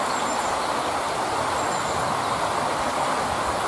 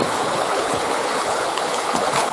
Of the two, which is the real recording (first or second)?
first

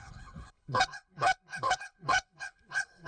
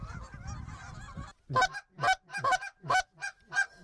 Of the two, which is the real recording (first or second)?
second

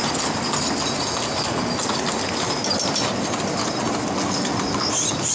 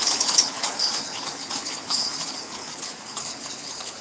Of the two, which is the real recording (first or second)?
first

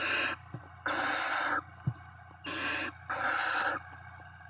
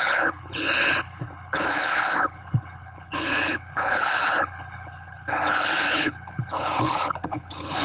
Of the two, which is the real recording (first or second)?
first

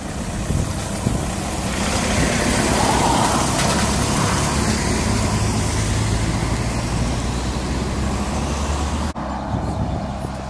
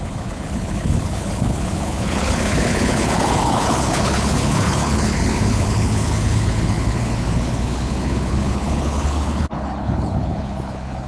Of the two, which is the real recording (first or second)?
first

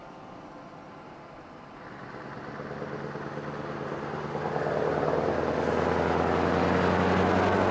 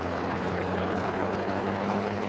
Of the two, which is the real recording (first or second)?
first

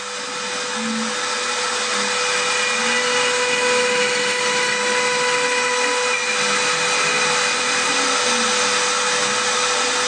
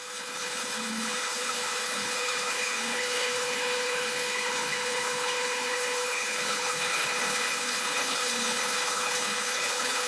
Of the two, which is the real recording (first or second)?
first